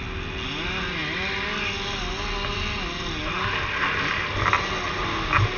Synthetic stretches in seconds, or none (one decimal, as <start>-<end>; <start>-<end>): none